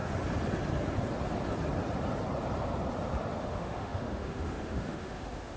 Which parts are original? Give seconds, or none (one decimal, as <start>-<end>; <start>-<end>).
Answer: 0.0-3.4

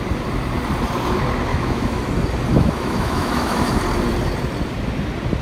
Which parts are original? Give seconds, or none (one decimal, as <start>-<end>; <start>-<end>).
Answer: 0.0-1.5; 2.0-2.5; 3.8-5.4

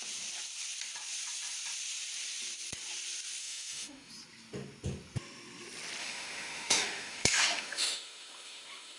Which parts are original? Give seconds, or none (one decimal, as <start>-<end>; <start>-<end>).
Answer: 0.0-3.4; 4.1-6.0

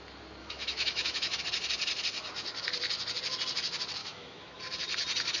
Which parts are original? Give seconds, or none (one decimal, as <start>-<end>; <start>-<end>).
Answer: 0.0-0.4; 1.4-4.0; 4.6-5.4

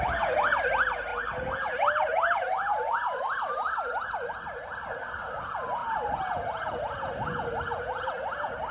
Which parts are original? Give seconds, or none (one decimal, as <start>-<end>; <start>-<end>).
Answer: 0.0-8.7

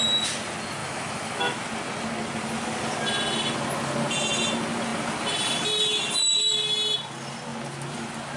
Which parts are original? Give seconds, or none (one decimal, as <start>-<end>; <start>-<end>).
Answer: 0.0-0.8; 1.4-8.4